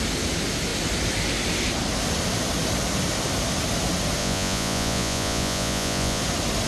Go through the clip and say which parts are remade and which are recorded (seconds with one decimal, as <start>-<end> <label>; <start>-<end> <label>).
0.0-4.2 recorded; 4.2-6.2 remade; 6.2-6.7 recorded